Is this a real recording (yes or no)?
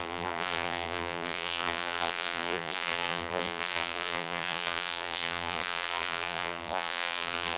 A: no